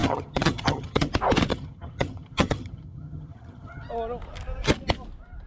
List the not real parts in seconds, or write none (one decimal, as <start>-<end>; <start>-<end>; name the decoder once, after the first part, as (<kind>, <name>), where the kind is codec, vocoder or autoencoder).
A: 0.0-1.1 (vocoder, HiFi-GAN); 1.5-3.9